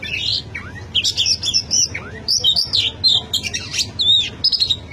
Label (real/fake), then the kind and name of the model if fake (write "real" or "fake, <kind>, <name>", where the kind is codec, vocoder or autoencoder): real